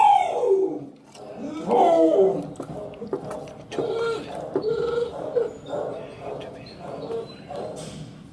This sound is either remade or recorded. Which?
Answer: recorded